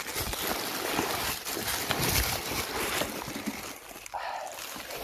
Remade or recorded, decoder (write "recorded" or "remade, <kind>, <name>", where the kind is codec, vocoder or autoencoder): recorded